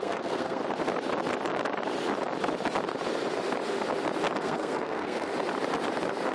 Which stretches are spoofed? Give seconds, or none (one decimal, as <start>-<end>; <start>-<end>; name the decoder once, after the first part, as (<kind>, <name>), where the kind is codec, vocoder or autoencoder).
0.0-0.6 (codec, SNAC); 4.4-5.3